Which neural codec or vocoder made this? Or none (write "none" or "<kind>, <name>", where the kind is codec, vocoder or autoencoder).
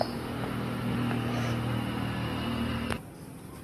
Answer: none